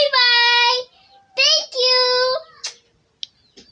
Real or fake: real